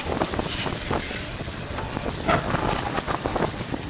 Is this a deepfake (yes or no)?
no